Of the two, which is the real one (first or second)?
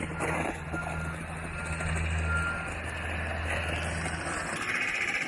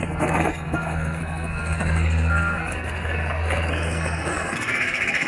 first